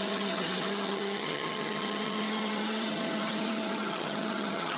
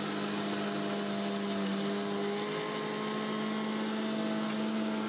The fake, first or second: first